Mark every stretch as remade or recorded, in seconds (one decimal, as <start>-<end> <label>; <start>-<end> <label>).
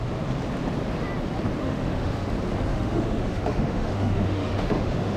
0.0-1.6 recorded; 1.6-2.3 remade; 2.3-2.7 recorded; 2.7-5.2 remade